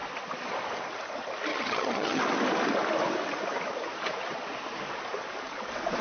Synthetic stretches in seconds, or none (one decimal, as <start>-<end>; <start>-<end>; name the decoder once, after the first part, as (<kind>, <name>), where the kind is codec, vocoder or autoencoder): 1.5-2.2 (vocoder, HiFi-GAN)